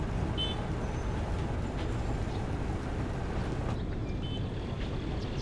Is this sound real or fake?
real